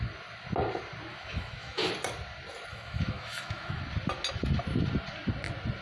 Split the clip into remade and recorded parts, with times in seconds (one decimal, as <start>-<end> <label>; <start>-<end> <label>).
0.0-1.1 recorded; 1.1-1.9 remade; 1.9-2.7 recorded; 2.7-3.8 remade; 3.8-5.8 recorded

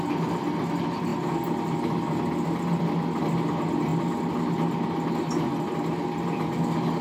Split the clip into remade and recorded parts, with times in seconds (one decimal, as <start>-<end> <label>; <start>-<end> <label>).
0.0-7.0 recorded

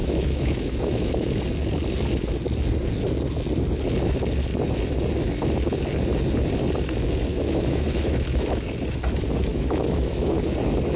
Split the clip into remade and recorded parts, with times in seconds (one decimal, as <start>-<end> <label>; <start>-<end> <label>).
0.0-1.4 remade; 1.4-7.3 recorded; 7.3-8.6 remade; 8.6-9.5 recorded; 9.5-10.4 remade; 10.4-11.0 recorded

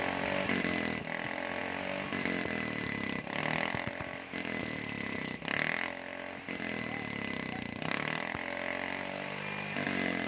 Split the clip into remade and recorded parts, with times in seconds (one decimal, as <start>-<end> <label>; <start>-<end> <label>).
0.0-4.6 recorded; 4.6-5.4 remade; 5.4-10.3 recorded

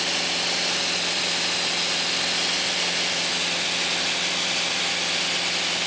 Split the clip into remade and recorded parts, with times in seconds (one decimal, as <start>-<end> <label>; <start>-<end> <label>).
0.0-5.9 recorded